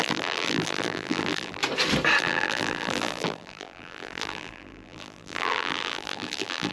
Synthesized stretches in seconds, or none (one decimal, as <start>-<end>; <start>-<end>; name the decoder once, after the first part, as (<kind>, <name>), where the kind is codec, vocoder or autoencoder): 0.0-1.6 (vocoder, BigVGAN v2); 2.2-6.7